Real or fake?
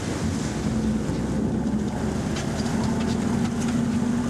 real